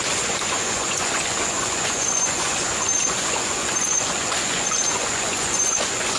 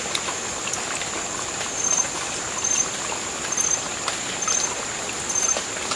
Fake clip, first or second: first